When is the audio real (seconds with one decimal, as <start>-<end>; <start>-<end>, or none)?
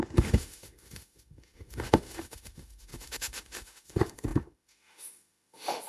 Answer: none